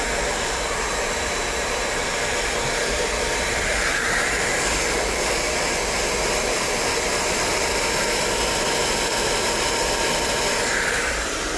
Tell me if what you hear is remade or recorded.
remade